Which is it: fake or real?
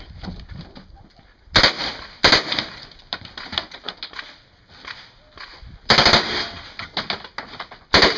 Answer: real